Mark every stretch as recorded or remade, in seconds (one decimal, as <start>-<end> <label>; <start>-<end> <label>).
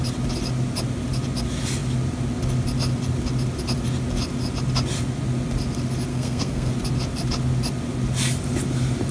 0.0-6.1 recorded; 6.1-6.7 remade; 6.7-9.1 recorded